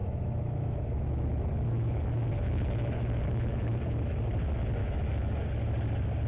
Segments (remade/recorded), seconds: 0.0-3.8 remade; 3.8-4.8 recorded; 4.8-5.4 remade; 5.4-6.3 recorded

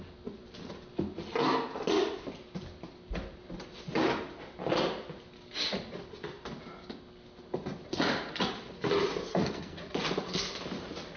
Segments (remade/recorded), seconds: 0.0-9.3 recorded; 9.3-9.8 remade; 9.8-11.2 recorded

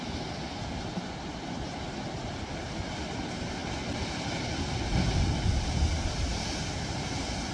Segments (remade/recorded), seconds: 0.0-7.5 recorded

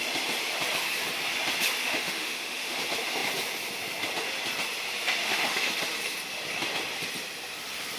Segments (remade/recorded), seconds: 0.0-1.8 recorded; 1.8-2.8 remade; 2.8-5.2 recorded; 5.2-5.7 remade; 5.7-8.0 recorded